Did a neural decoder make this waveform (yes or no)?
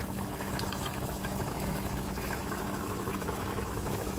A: yes